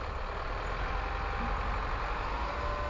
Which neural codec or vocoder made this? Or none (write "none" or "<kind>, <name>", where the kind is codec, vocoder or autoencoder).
none